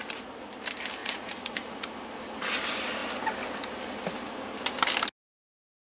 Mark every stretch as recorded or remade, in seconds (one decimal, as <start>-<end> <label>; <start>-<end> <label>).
0.0-1.0 recorded; 1.0-1.9 remade; 1.9-5.9 recorded